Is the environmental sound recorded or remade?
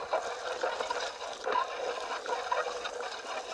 recorded